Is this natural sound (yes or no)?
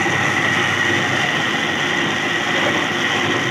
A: yes